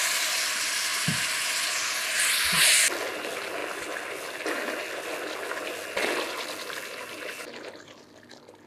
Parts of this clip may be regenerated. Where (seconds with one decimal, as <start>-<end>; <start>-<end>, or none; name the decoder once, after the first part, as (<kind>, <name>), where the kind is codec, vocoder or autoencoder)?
none

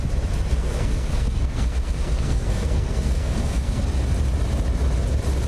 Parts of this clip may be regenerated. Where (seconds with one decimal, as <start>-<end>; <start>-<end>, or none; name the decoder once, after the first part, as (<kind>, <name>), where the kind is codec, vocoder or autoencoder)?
0.5-3.8 (codec, SNAC)

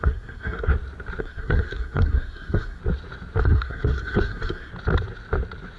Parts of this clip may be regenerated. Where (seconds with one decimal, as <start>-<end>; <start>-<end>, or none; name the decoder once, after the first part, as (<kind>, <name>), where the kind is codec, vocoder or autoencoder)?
0.0-0.7 (codec, SNAC); 1.2-2.8; 3.4-4.7

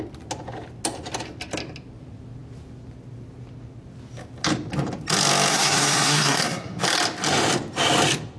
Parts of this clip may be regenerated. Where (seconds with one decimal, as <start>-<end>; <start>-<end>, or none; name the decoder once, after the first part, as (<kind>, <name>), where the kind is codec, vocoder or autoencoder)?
5.5-6.8 (codec, SNAC)